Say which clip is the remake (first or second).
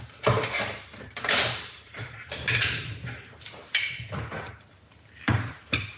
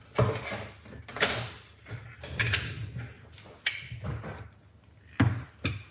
first